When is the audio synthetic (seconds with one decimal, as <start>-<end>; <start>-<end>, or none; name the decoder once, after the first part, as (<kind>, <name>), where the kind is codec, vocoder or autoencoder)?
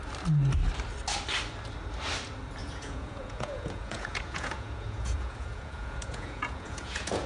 2.6-7.3 (vocoder, Vocos)